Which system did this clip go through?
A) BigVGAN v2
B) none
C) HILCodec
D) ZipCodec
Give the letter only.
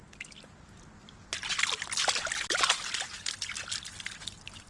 B